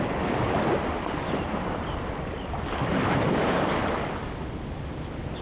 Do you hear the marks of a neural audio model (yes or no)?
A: no